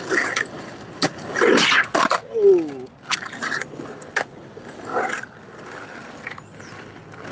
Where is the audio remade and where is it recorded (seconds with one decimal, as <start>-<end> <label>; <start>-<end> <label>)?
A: 0.0-7.3 recorded